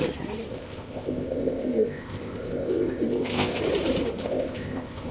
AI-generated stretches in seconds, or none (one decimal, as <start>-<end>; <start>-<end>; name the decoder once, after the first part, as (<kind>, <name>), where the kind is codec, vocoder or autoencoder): 0.5-3.6 (codec, ZipCodec); 4.2-5.1